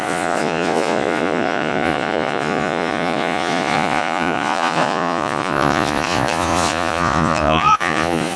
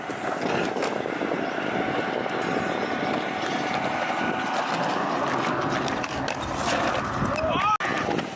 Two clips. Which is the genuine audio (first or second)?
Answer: second